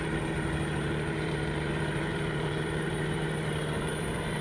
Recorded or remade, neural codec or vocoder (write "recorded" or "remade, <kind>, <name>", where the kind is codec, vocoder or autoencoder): remade, vocoder, BigVGAN v2